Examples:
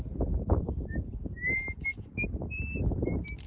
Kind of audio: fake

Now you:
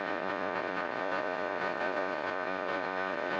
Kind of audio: fake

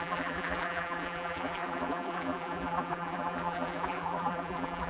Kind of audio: fake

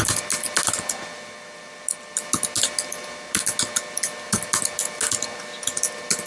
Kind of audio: real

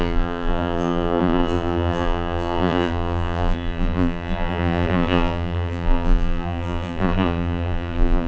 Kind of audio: fake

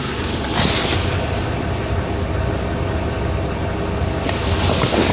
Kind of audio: real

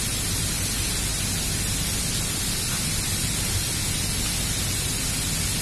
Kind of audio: real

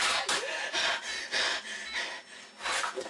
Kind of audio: real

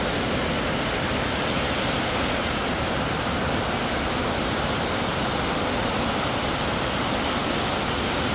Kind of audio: real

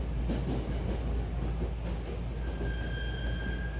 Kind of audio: real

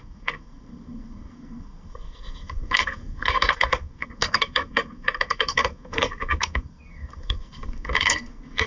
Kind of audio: fake